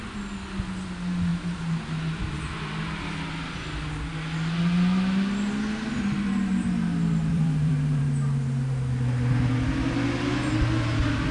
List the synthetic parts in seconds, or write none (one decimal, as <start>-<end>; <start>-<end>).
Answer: 1.3-3.0; 7.3-8.0